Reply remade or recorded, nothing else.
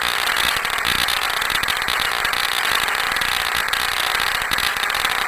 recorded